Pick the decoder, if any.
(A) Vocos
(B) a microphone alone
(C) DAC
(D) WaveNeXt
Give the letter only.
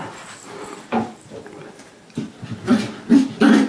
B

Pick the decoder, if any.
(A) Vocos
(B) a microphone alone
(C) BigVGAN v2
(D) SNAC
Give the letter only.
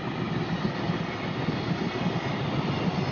B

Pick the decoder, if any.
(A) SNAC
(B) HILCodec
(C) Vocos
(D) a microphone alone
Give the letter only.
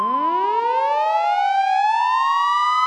D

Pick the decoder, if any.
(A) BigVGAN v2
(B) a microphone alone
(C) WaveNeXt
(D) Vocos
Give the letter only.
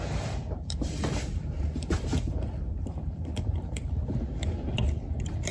A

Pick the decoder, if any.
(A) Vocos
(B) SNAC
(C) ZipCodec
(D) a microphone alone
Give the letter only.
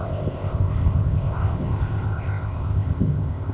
C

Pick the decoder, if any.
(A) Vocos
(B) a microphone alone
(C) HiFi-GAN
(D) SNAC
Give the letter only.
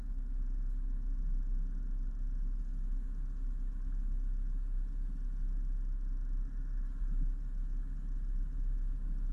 B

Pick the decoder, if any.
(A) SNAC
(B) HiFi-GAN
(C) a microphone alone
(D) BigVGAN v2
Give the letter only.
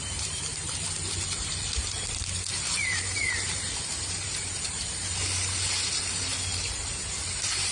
D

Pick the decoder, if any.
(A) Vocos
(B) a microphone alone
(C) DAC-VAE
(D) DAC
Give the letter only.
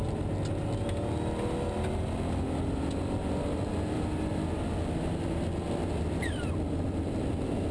B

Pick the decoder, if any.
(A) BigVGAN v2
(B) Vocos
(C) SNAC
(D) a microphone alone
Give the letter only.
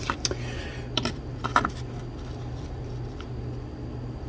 D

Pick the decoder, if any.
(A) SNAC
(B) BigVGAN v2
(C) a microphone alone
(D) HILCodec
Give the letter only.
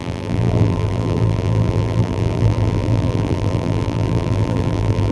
B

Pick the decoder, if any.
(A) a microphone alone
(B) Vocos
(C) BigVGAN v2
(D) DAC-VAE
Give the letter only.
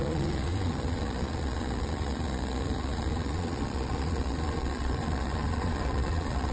B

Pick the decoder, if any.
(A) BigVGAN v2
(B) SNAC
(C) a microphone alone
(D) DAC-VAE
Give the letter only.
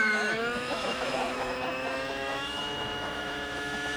D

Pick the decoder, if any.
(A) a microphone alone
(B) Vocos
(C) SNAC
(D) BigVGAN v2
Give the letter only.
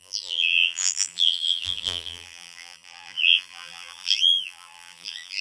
D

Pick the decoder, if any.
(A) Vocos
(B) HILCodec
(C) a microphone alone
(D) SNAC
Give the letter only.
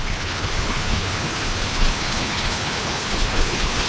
B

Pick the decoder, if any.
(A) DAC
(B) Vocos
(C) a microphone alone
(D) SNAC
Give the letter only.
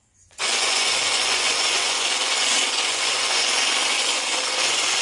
B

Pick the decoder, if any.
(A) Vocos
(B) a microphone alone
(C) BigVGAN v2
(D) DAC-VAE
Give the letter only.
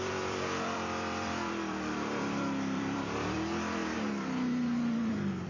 C